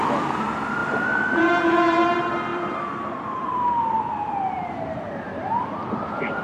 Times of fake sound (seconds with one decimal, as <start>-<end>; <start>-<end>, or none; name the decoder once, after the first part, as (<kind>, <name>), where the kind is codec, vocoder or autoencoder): 2.5-6.4 (vocoder, BigVGAN v2)